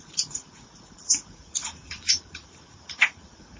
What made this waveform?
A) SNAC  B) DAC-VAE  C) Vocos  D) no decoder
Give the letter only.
C